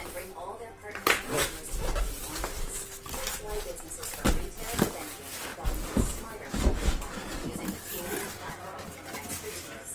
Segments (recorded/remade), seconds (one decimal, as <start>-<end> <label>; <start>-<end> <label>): 0.0-9.9 recorded